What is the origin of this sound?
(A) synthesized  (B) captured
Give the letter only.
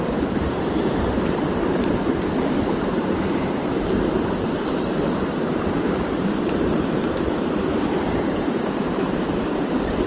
A